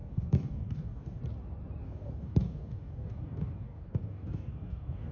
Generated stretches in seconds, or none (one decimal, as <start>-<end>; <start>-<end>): 0.0-1.2; 1.8-5.1